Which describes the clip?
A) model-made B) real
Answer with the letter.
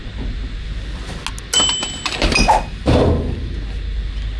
B